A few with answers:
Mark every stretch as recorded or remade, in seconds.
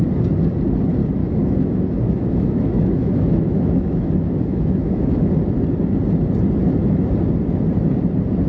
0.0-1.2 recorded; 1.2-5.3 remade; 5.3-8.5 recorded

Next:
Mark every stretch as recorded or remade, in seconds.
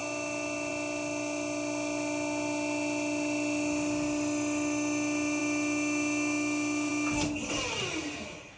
0.0-8.6 recorded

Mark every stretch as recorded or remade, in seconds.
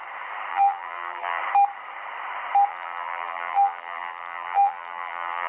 0.0-0.5 recorded; 0.5-1.4 remade; 1.4-2.7 recorded; 2.7-5.5 remade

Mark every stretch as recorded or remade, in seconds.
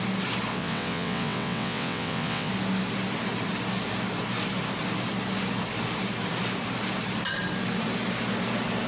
0.0-0.5 recorded; 0.5-2.5 remade; 2.5-8.9 recorded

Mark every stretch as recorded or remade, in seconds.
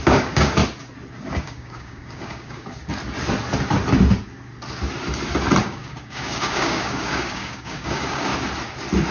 0.0-0.6 remade; 0.6-1.3 recorded; 1.3-2.8 remade; 2.8-5.6 recorded; 5.6-8.3 remade; 8.3-9.1 recorded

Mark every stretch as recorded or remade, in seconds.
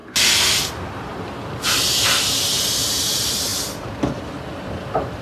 0.0-0.7 recorded; 0.7-5.2 remade